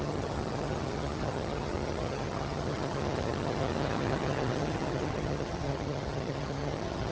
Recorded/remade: remade